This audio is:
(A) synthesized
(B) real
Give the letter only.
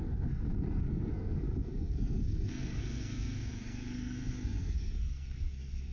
A